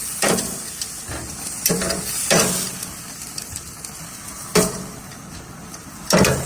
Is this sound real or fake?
real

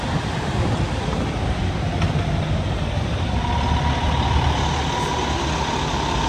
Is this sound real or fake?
real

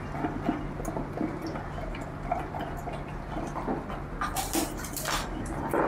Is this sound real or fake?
real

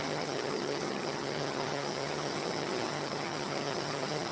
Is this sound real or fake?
fake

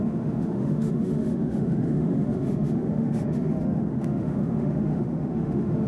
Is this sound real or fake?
fake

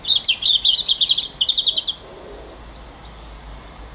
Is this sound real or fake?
real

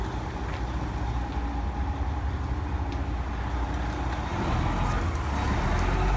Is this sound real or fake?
real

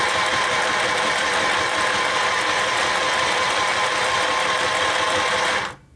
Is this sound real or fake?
real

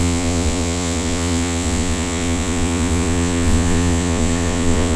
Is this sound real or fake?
fake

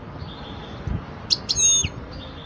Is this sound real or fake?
real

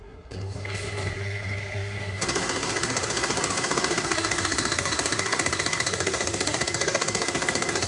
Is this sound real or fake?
fake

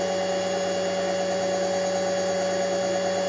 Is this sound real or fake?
real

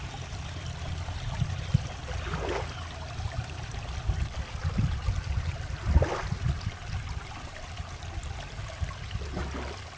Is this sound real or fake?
real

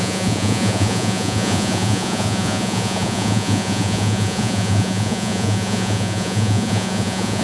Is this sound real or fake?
fake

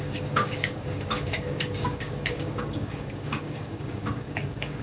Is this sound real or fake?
fake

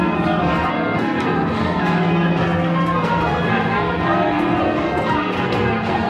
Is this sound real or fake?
fake